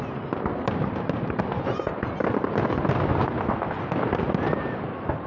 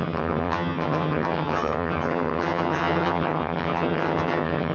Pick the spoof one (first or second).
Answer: second